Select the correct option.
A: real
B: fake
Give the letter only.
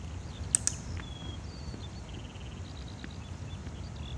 A